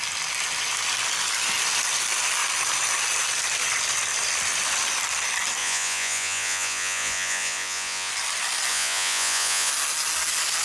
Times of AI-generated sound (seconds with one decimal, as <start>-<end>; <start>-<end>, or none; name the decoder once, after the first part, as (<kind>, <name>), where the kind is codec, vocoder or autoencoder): 5.6-8.1 (vocoder, Vocos); 8.7-9.7